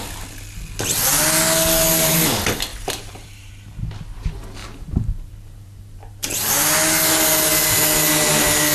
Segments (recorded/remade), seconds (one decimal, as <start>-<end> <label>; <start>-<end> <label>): 0.0-2.7 recorded; 2.7-3.5 remade; 3.5-4.6 recorded; 4.6-6.5 remade; 6.5-8.7 recorded